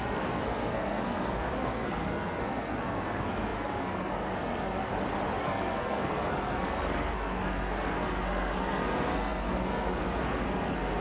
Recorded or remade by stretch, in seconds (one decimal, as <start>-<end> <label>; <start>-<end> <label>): 0.0-4.9 remade; 4.9-5.4 recorded; 5.4-11.0 remade

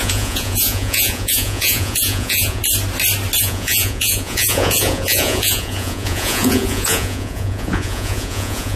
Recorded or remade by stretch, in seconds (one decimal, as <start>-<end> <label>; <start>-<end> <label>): 0.0-2.6 remade; 2.6-3.4 recorded; 3.4-8.8 remade

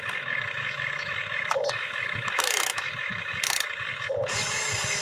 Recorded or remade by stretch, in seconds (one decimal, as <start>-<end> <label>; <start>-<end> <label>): 0.0-5.0 remade

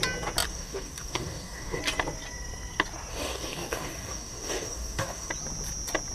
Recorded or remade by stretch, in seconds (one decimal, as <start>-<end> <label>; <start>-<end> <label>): 0.0-0.5 recorded; 0.5-1.8 remade; 1.8-3.1 recorded; 3.1-5.3 remade; 5.3-6.1 recorded